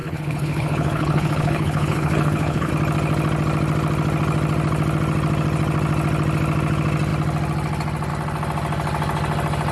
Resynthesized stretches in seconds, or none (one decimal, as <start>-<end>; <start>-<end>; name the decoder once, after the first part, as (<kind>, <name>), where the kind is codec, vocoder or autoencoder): 0.0-2.7 (codec, HILCodec)